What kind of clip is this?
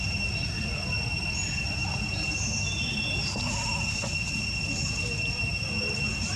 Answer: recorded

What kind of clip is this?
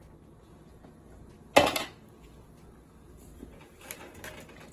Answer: recorded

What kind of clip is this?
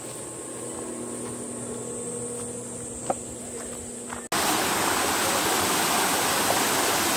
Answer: recorded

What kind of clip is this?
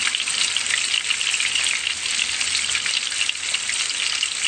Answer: recorded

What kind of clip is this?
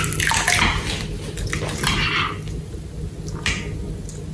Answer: recorded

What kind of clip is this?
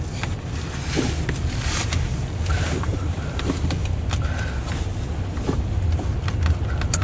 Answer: remade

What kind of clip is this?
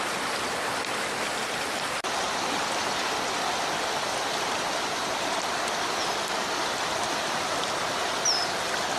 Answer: recorded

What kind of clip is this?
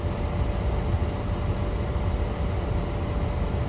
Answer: recorded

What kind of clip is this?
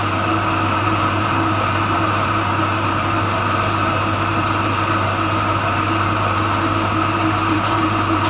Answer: remade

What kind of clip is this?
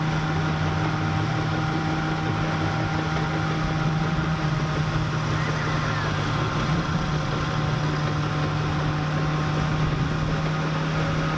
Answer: recorded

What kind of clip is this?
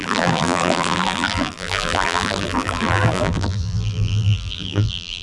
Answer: remade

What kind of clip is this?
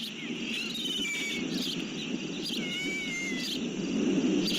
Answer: recorded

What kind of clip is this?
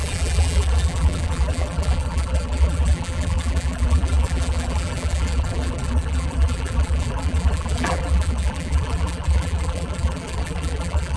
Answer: remade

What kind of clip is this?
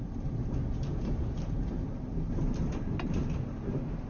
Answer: remade